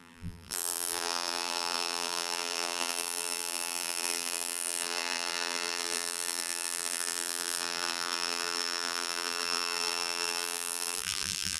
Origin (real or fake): fake